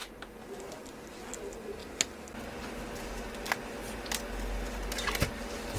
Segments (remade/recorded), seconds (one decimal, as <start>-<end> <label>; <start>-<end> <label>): 0.0-5.8 recorded